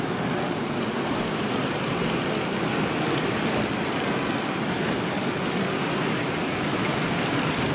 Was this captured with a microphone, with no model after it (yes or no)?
yes